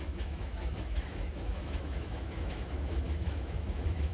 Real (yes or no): no